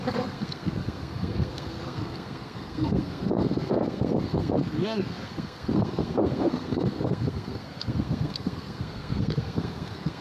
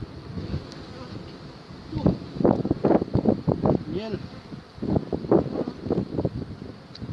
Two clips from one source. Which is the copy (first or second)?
first